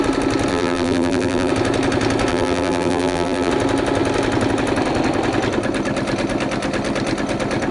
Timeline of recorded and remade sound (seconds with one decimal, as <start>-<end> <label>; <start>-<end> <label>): 0.0-0.5 recorded; 0.5-1.5 remade; 1.5-2.3 recorded; 2.3-3.5 remade; 3.5-7.7 recorded